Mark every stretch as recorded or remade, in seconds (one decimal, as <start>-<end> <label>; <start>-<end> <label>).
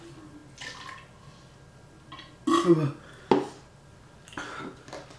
0.0-5.2 recorded